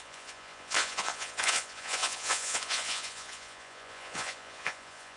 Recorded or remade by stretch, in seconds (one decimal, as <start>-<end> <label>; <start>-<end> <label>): 0.0-5.2 remade